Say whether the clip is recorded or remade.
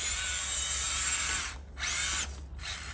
recorded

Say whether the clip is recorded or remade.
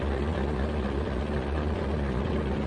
remade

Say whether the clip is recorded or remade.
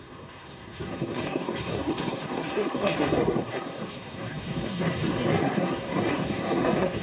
remade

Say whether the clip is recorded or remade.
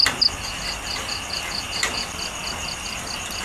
recorded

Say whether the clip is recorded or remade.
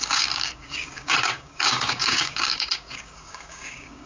remade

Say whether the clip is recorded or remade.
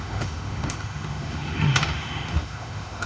remade